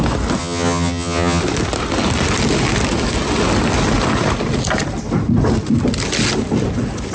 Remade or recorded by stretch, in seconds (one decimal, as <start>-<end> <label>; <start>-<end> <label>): 0.0-0.4 recorded; 0.4-1.4 remade; 1.4-7.1 recorded